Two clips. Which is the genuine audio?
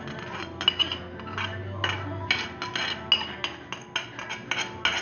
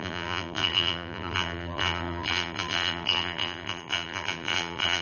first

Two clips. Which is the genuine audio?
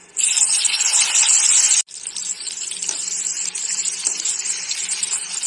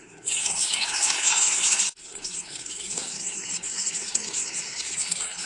first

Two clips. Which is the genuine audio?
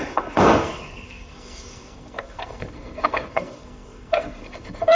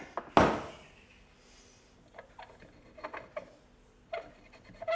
second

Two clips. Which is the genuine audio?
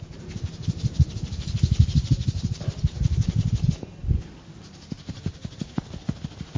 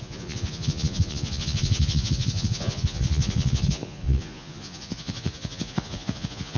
first